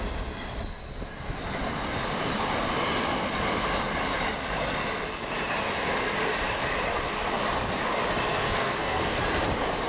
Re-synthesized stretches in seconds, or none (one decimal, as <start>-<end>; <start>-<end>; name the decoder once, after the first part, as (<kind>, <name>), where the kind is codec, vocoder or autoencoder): 8.4-9.2 (codec, SNAC)